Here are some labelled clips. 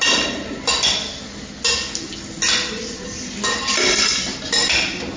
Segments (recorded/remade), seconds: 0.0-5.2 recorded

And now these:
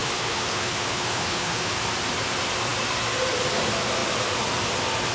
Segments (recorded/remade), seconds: 0.0-1.7 remade; 1.7-5.1 recorded

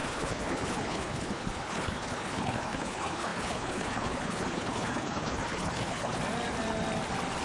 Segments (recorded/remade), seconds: 0.0-6.2 remade; 6.2-7.4 recorded

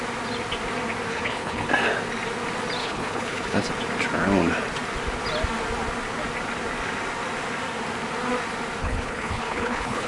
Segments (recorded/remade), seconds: 0.0-1.1 recorded; 1.1-1.7 remade; 1.7-2.8 recorded; 2.8-3.7 remade; 3.7-8.8 recorded; 8.8-10.1 remade

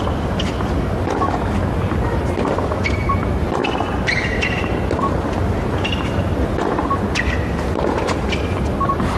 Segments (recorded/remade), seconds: 0.0-9.2 recorded

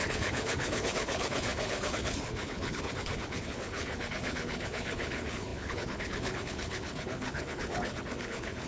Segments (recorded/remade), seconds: 0.0-8.7 remade